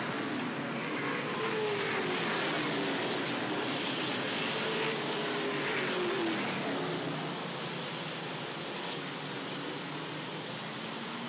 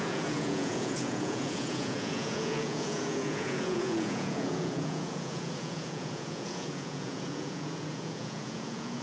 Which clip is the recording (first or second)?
first